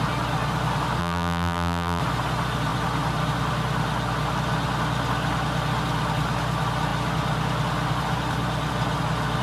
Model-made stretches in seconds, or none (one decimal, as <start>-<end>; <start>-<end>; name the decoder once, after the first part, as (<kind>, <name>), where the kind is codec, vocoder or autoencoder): 1.0-2.0 (vocoder, BigVGAN v2)